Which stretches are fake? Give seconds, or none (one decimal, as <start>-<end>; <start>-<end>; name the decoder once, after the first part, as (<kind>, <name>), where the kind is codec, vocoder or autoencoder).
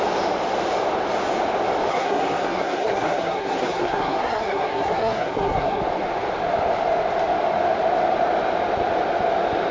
1.9-5.8 (codec, SNAC)